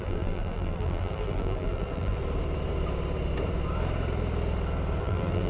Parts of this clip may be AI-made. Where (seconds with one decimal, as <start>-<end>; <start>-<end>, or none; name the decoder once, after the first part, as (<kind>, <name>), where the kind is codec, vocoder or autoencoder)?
0.0-2.2 (vocoder, BigVGAN v2); 5.0-5.5